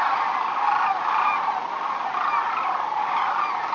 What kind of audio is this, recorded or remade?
recorded